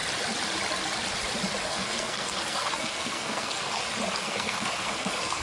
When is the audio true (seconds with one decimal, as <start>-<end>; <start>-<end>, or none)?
0.0-1.7; 3.8-4.2